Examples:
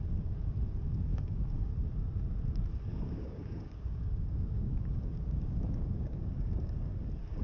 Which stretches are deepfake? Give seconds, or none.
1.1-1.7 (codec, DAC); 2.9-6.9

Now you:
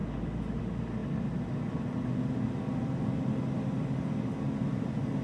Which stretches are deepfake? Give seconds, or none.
none

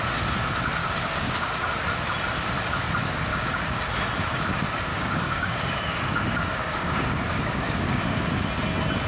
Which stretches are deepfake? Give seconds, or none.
0.8-1.7 (codec, DAC); 3.3-3.8; 4.9-8.0

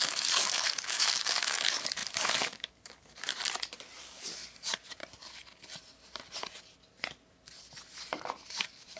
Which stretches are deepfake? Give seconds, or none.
0.0-3.3 (codec, DAC); 4.0-5.0; 8.5-9.0

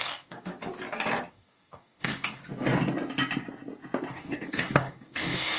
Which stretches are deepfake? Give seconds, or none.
0.0-0.5 (codec, DAC); 1.3-2.4; 4.1-5.6

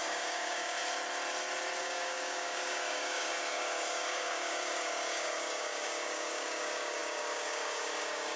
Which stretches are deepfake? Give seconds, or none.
0.0-0.8 (codec, DAC); 1.8-8.4

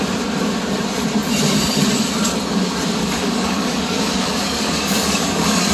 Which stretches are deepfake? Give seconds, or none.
3.0-5.7 (codec, DAC)

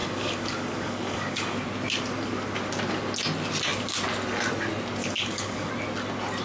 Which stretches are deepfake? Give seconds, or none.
0.0-1.6 (codec, DAC); 5.0-5.7